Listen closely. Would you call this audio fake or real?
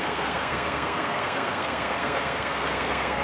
fake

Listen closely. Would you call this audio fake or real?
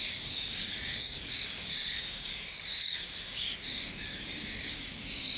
fake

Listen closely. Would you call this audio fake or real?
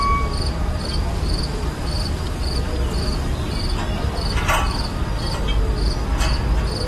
real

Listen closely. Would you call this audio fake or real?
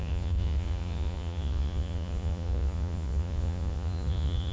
fake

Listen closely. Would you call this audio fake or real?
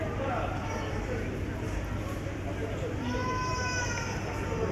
real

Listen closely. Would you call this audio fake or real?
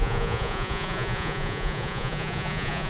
fake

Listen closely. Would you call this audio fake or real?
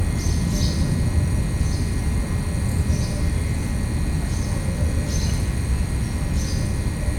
real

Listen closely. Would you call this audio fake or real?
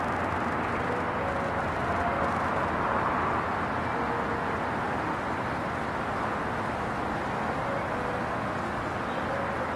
real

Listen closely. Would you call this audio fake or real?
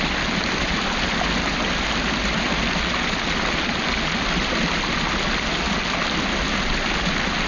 real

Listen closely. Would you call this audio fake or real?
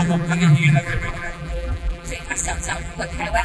fake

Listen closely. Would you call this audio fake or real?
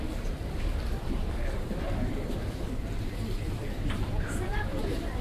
fake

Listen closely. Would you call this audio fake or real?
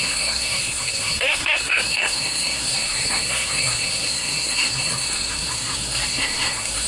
fake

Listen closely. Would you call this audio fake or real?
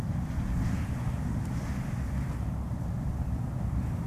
real